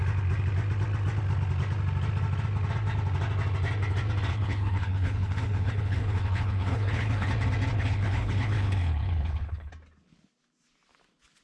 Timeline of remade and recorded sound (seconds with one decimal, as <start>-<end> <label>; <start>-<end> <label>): 0.0-4.3 recorded; 4.3-7.3 remade; 7.3-7.7 recorded; 7.7-9.7 remade; 9.7-11.4 recorded